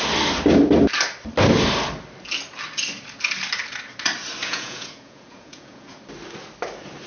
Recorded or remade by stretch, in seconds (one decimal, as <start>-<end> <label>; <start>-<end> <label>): 0.0-4.4 recorded; 4.4-6.0 remade; 6.0-7.1 recorded